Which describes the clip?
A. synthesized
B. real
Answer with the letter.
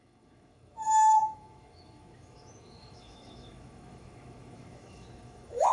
A